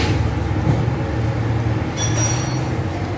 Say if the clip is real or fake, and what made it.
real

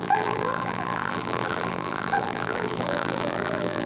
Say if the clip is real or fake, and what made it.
fake, vocoder, BigVGAN v2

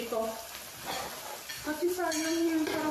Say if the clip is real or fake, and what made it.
fake, vocoder, BigVGAN v2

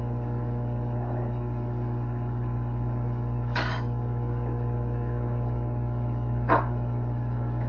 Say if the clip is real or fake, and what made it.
fake, codec, DAC